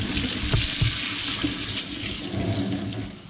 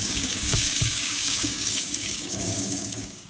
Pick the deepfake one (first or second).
second